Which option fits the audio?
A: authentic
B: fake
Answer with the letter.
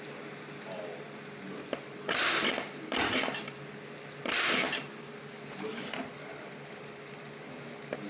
A